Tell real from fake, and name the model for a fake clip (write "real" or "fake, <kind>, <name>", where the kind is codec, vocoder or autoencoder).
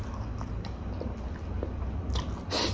real